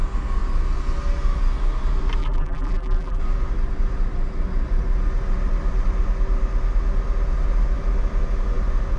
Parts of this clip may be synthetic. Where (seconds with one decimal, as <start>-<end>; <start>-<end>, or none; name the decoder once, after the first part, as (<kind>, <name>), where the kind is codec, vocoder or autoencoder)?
2.2-3.2 (vocoder, BigVGAN v2)